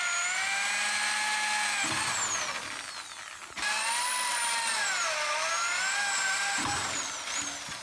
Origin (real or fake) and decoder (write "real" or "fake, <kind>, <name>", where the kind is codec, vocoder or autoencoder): real